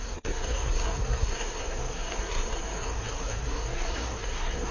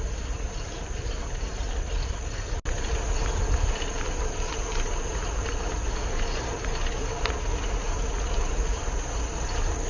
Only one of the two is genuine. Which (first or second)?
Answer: second